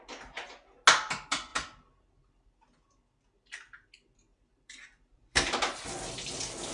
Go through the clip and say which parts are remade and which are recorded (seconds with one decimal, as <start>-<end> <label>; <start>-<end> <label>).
0.0-4.3 recorded; 4.3-5.6 remade; 5.6-6.7 recorded